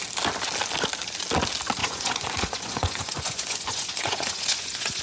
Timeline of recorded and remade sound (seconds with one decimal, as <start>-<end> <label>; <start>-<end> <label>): 0.0-1.8 recorded; 1.8-5.0 remade